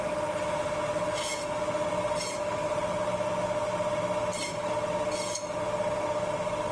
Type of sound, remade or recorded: recorded